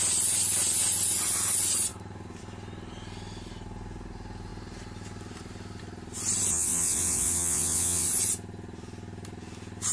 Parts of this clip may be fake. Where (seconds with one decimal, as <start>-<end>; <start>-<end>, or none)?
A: 6.5-8.1